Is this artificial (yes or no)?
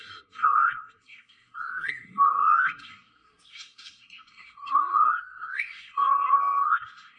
yes